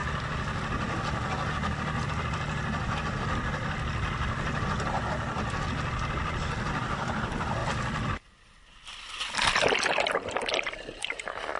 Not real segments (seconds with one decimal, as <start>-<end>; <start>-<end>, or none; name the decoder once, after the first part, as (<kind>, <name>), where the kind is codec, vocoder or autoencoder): none